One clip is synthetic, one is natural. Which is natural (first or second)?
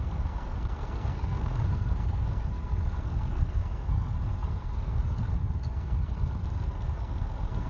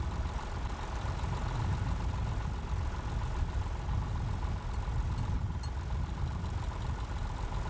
second